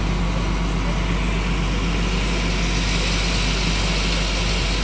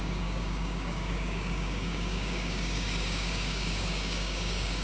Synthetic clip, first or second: second